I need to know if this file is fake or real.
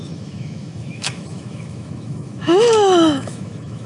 fake